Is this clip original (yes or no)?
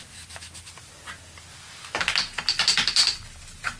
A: yes